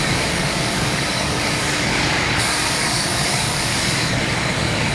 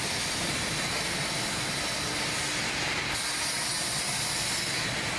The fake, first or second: first